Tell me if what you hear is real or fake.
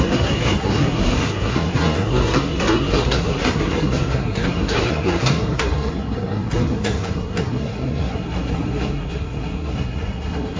fake